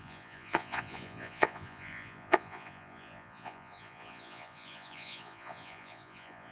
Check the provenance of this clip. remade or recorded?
remade